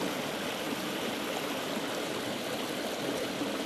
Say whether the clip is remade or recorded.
recorded